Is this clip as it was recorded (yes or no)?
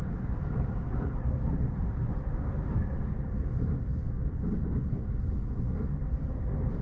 yes